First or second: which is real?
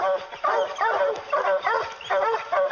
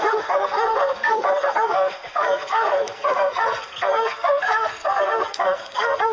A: first